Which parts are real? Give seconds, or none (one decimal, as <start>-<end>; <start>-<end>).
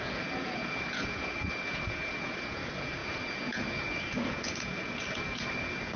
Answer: none